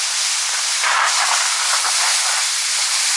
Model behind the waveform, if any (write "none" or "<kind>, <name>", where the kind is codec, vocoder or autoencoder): none